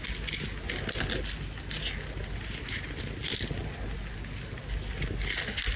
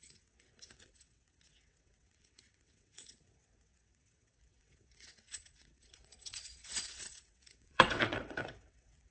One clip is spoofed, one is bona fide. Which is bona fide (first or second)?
first